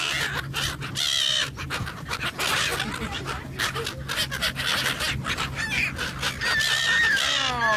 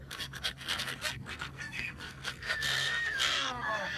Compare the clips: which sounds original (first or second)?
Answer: first